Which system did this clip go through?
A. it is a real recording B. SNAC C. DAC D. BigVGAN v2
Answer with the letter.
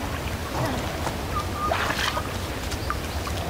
A